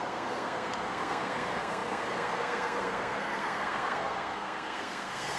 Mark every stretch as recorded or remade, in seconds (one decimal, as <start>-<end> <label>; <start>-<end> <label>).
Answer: 0.0-5.4 remade